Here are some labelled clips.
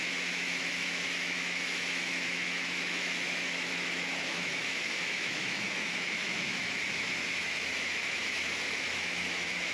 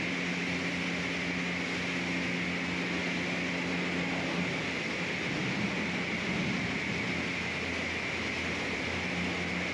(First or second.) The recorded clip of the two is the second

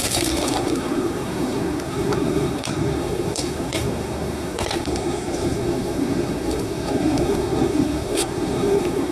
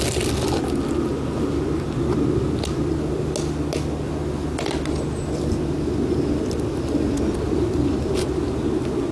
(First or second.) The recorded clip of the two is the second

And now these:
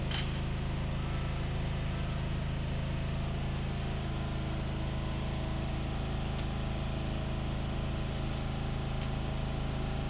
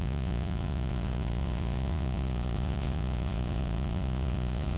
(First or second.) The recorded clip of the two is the first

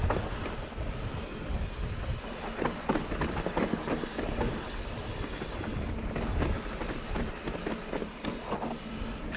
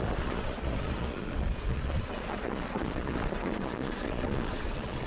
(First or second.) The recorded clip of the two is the first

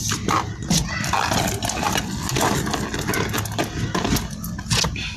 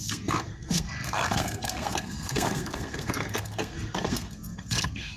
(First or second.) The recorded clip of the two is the first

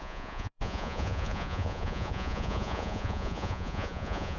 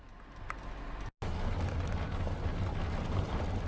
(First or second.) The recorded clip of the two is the second